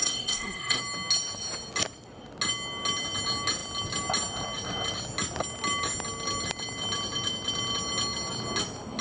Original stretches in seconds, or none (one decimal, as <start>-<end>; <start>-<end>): 0.8-9.0